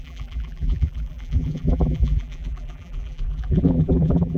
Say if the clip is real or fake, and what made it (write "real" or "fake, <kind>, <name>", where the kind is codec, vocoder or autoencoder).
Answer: fake, vocoder, BigVGAN v2